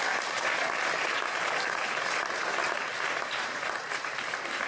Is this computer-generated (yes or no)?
no